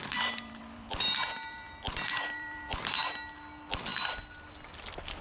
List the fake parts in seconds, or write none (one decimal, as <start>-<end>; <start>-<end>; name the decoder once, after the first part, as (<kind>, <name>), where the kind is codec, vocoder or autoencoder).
0.0-3.1 (vocoder, BigVGAN v2)